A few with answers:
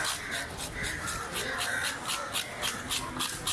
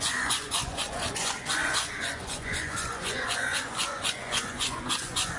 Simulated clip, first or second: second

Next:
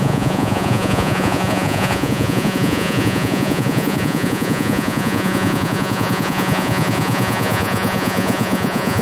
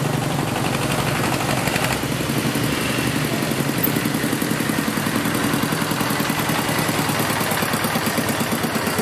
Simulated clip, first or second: first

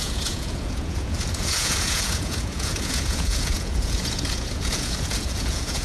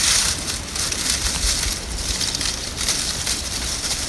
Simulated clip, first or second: first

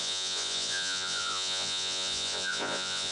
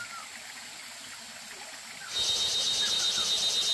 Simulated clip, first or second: first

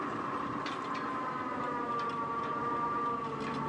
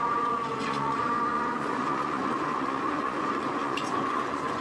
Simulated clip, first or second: second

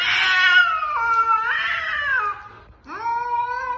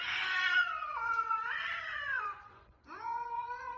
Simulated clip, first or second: second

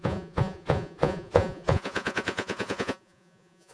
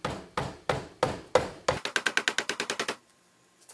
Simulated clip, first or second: first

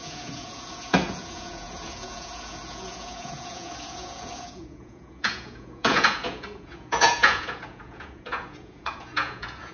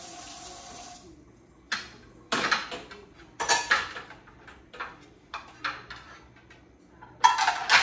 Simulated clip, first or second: first